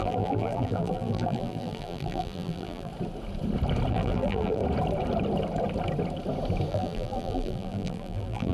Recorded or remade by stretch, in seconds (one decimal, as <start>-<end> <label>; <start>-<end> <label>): 0.0-2.9 remade; 2.9-3.9 recorded; 3.9-4.6 remade; 4.6-6.7 recorded; 6.7-8.5 remade